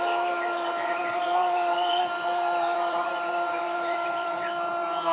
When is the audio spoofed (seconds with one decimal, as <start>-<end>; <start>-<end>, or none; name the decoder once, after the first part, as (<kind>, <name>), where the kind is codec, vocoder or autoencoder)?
1.3-4.4 (vocoder, BigVGAN v2)